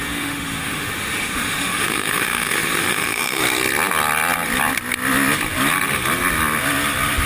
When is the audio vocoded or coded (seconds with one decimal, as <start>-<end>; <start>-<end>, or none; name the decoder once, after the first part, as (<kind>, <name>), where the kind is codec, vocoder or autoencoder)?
0.0-3.4 (autoencoder, DAC-VAE)